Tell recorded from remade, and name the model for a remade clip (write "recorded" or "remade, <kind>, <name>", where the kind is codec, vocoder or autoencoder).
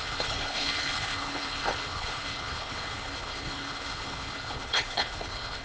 remade, codec, HILCodec